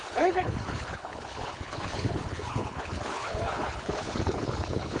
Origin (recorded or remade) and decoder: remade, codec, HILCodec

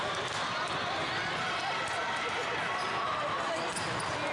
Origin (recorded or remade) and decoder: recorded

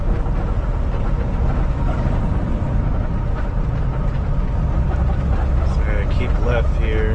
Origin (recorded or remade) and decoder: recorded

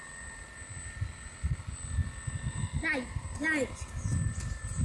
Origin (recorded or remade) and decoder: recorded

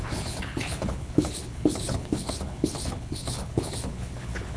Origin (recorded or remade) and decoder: remade, codec, HILCodec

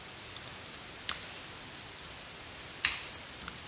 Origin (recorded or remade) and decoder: recorded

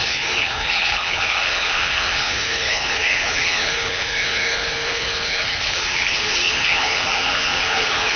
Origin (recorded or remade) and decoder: remade, codec, HILCodec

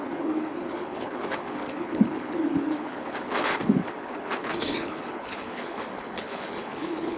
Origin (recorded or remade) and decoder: remade, codec, HILCodec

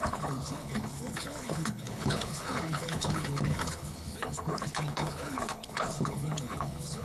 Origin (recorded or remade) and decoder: remade, codec, HILCodec